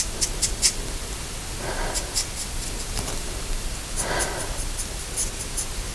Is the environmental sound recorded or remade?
recorded